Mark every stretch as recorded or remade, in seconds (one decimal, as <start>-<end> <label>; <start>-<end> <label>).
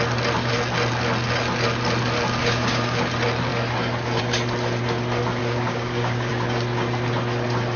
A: 0.0-2.4 recorded; 2.4-3.0 remade; 3.0-5.4 recorded; 5.4-6.3 remade; 6.3-7.8 recorded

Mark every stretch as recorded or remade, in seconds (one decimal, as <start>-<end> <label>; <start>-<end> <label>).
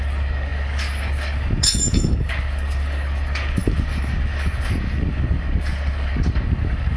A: 0.0-7.0 remade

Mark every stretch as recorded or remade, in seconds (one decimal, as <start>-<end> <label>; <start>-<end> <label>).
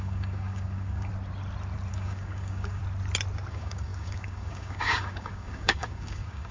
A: 0.0-1.1 remade; 1.1-1.9 recorded; 1.9-2.8 remade; 2.8-3.5 recorded; 3.5-6.5 remade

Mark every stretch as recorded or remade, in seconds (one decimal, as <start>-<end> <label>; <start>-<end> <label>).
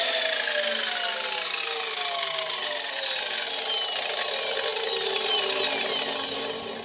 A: 0.0-6.8 recorded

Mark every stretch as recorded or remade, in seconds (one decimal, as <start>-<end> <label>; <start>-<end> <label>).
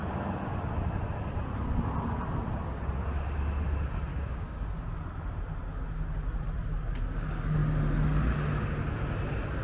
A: 0.0-4.1 recorded; 4.1-4.7 remade; 4.7-9.6 recorded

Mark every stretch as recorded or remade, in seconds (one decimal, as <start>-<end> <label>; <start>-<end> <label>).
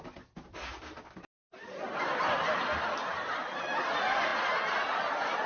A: 0.0-5.5 recorded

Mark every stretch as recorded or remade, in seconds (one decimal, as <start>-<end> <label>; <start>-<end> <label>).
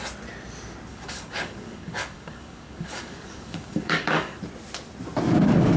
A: 0.0-0.9 recorded; 0.9-4.4 remade; 4.4-5.8 recorded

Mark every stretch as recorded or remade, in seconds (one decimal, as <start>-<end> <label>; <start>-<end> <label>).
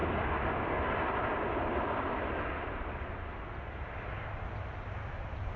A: 0.0-5.6 recorded